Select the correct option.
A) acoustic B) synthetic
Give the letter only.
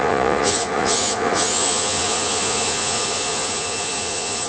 B